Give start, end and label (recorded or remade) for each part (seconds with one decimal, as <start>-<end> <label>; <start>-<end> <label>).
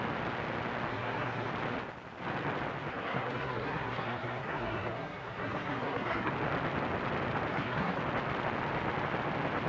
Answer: 0.0-0.9 recorded; 0.9-1.5 remade; 1.5-2.9 recorded; 2.9-6.3 remade; 6.3-7.5 recorded; 7.5-8.0 remade; 8.0-9.7 recorded